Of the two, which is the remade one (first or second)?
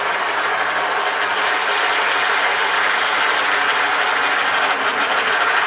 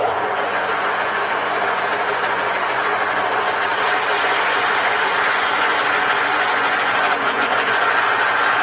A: second